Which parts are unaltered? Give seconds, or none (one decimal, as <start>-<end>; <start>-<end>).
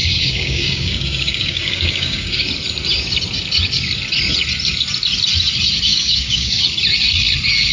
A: 2.4-5.9; 6.6-7.7